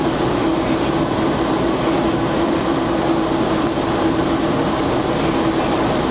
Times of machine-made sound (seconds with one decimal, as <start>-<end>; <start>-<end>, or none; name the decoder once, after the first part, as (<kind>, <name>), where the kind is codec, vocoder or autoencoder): none